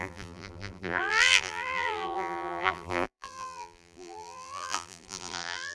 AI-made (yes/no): yes